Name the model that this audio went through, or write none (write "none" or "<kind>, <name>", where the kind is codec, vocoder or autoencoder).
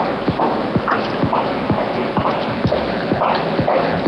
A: none